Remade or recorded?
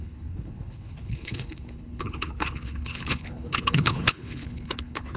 remade